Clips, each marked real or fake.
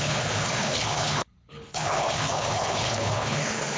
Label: fake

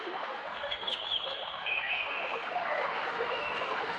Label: fake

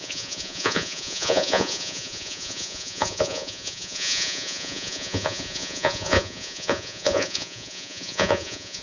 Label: fake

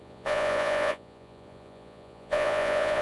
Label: fake